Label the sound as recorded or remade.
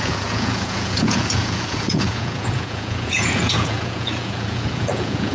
remade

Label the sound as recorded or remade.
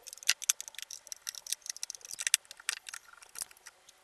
recorded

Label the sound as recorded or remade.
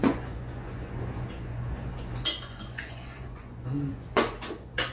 remade